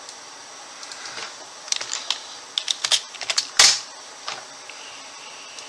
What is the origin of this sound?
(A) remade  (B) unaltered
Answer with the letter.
B